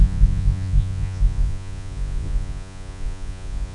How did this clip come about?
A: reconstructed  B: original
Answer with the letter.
A